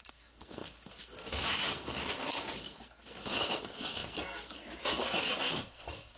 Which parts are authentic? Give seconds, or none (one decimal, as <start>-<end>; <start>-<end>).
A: none